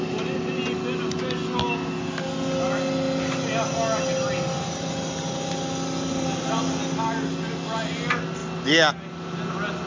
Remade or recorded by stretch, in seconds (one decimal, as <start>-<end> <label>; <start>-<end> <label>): 0.0-9.9 recorded